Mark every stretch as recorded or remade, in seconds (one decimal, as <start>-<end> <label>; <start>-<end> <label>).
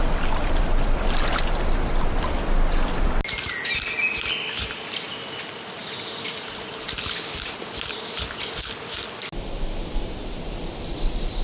0.0-11.4 recorded